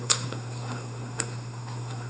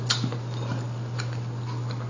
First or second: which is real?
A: second